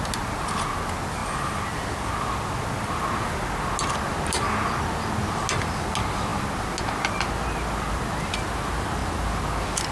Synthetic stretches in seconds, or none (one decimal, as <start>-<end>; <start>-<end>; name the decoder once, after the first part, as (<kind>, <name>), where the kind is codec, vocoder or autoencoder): none